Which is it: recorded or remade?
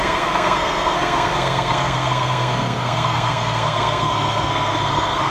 remade